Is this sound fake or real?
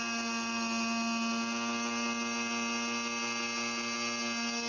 real